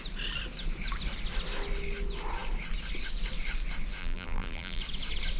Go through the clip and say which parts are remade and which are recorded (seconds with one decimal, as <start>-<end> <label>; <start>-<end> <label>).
0.0-4.0 recorded; 4.0-4.8 remade; 4.8-5.4 recorded

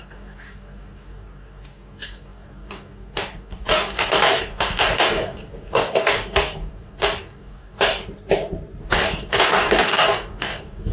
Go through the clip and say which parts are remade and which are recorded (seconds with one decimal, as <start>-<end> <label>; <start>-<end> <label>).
0.0-8.0 remade; 8.0-8.8 recorded; 8.8-10.9 remade